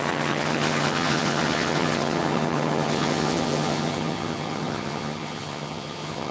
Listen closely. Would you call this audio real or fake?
fake